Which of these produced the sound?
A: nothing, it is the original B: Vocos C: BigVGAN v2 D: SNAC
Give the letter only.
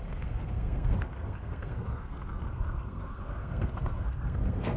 D